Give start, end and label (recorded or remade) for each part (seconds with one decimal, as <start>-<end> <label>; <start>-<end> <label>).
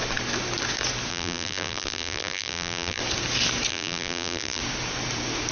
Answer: 0.0-1.1 recorded; 1.1-3.0 remade; 3.0-3.7 recorded; 3.7-4.6 remade; 4.6-5.5 recorded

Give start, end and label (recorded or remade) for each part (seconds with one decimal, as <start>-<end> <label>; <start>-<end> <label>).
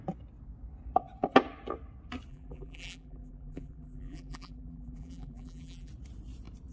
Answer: 0.0-2.3 recorded; 2.3-5.9 remade; 5.9-6.7 recorded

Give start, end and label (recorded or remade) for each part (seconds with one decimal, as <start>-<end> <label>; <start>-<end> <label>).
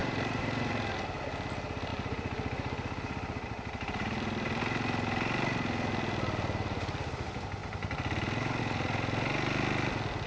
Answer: 0.0-0.7 remade; 0.7-1.9 recorded; 1.9-4.6 remade; 4.6-10.3 recorded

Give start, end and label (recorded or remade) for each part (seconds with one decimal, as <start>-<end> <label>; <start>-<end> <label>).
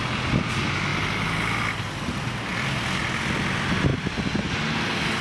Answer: 0.0-5.2 recorded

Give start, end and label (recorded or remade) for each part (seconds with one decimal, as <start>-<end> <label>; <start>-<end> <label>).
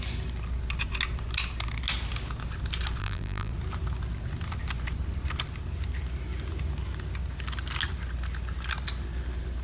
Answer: 0.0-3.0 recorded; 3.0-3.5 remade; 3.5-9.6 recorded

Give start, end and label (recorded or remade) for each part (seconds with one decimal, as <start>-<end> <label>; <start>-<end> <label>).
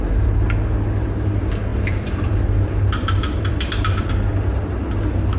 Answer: 0.0-1.7 recorded; 1.7-4.1 remade; 4.1-5.4 recorded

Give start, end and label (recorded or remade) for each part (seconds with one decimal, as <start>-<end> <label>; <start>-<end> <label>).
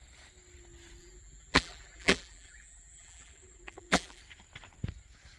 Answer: 0.0-1.0 recorded; 1.0-4.2 remade; 4.2-5.4 recorded